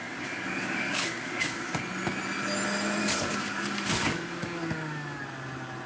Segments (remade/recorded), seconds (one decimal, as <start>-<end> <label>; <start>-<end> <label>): 0.0-1.8 remade; 1.8-3.0 recorded; 3.0-5.2 remade; 5.2-5.9 recorded